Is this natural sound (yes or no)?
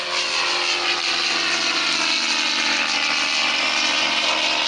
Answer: yes